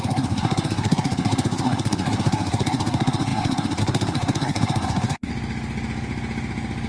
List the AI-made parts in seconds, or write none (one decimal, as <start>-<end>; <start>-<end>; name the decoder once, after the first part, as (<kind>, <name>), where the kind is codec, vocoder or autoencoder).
0.0-5.3 (codec, SNAC)